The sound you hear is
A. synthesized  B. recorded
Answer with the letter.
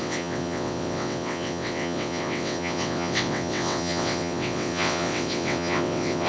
A